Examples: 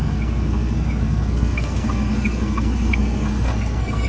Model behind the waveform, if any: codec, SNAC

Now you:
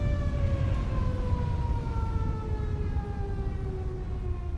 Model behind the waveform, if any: none